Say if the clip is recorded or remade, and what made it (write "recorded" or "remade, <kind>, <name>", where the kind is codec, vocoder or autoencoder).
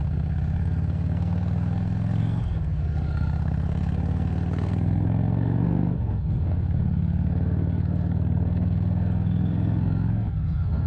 remade, codec, SNAC